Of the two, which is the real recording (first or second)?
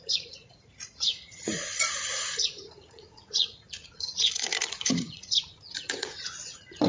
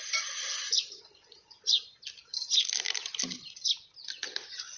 second